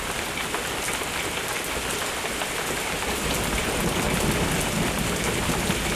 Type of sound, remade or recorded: recorded